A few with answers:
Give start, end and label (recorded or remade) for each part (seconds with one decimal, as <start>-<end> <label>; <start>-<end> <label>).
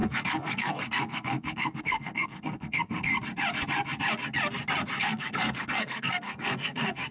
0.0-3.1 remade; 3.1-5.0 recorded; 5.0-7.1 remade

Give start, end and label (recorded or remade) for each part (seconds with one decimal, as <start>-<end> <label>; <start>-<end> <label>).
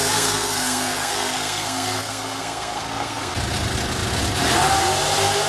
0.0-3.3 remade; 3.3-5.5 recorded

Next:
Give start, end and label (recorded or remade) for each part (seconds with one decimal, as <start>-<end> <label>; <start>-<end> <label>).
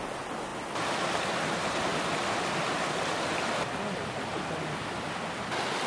0.0-5.9 recorded